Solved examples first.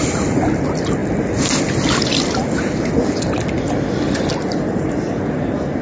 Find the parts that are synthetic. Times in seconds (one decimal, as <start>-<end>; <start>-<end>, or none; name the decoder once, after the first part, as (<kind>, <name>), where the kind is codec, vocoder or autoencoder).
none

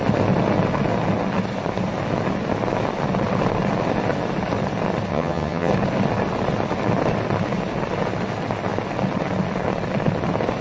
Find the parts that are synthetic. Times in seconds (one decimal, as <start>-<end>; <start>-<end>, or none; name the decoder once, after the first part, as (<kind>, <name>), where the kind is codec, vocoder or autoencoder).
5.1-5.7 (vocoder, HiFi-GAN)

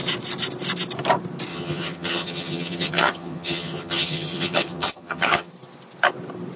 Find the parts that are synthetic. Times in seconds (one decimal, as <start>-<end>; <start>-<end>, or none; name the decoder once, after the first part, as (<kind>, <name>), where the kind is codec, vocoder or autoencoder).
1.5-5.5 (vocoder, HiFi-GAN)